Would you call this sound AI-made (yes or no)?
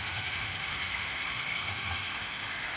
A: yes